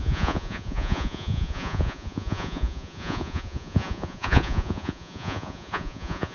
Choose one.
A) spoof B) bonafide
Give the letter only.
A